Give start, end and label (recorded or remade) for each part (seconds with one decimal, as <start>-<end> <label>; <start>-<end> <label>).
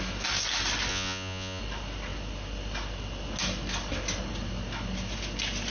0.0-0.9 recorded; 0.9-1.6 remade; 1.6-5.7 recorded